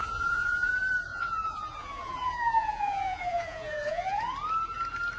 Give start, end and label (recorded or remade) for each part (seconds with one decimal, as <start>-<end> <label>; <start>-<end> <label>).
0.0-0.7 remade; 0.7-1.1 recorded; 1.1-4.2 remade; 4.2-5.2 recorded